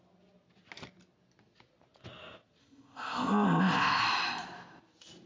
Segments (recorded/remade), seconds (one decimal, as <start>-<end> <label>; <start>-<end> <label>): 0.0-2.6 recorded; 2.6-4.0 remade; 4.0-5.3 recorded